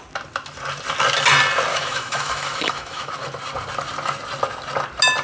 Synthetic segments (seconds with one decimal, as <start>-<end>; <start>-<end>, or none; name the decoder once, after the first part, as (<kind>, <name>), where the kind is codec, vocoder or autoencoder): 1.7-3.1 (autoencoder, DAC-VAE)